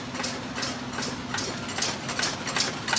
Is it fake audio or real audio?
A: real